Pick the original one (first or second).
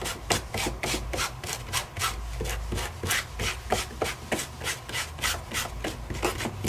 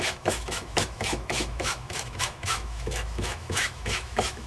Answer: first